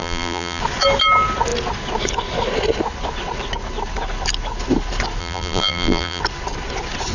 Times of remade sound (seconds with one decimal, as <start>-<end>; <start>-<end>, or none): 0.0-0.6; 5.2-6.2

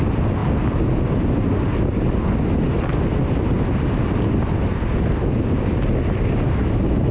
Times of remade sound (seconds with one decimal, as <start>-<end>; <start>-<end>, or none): none

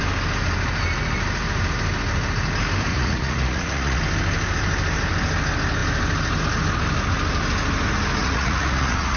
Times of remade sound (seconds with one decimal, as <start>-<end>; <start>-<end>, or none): 2.9-4.0; 8.2-9.2

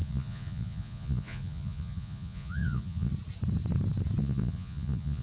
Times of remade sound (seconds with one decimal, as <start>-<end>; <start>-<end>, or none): 0.0-3.1; 4.2-5.2

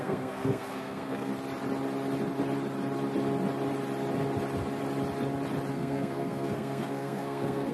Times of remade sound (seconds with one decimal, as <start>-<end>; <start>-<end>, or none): 0.0-1.3; 5.7-7.7

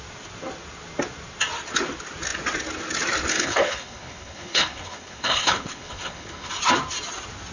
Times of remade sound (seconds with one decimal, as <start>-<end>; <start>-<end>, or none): 3.3-6.5